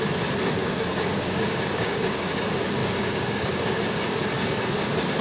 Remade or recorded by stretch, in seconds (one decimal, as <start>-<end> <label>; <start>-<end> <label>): 0.0-0.6 recorded; 0.6-2.3 remade; 2.3-2.8 recorded; 2.8-3.8 remade; 3.8-5.2 recorded